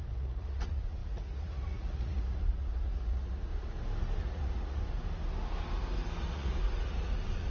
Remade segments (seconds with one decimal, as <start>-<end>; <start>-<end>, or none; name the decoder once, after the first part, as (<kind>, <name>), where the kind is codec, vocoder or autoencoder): 0.0-3.5 (vocoder, Vocos); 4.2-4.8; 6.2-7.5